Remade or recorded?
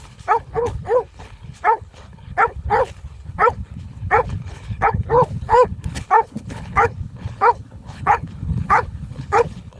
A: remade